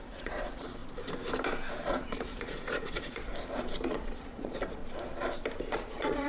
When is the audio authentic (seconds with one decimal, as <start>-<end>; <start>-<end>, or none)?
0.8-1.9; 3.3-3.9; 4.8-5.6

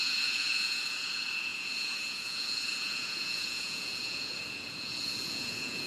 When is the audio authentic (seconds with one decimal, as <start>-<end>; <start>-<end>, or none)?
none

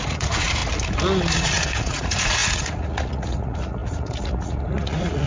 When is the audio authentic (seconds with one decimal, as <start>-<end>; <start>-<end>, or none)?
0.6-1.3

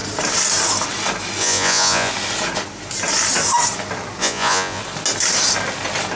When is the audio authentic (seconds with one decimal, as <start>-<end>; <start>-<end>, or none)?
0.0-1.4; 2.1-4.2; 4.8-6.2

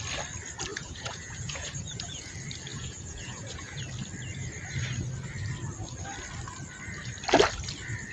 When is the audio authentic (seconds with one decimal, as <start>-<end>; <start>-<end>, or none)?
0.0-0.7; 2.3-2.7; 3.8-8.1

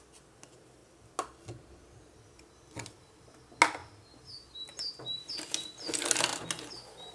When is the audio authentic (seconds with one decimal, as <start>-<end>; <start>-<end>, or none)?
0.0-7.1